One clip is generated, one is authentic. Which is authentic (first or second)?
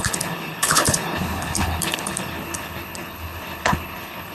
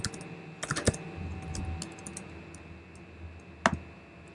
second